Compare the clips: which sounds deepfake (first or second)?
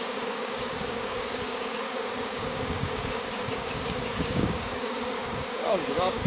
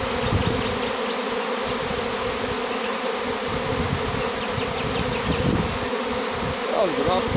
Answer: first